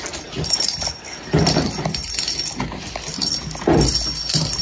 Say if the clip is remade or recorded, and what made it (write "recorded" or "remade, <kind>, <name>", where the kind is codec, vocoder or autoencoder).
recorded